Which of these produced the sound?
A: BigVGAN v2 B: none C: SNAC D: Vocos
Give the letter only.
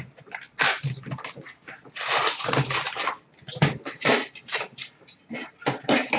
B